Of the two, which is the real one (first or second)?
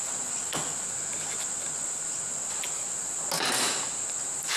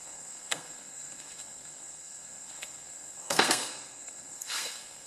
first